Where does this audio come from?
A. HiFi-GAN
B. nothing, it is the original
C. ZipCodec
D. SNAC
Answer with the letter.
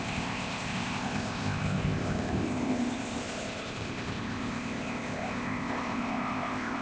C